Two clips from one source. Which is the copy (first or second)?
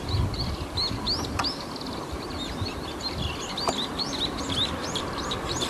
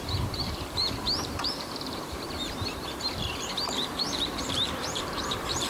second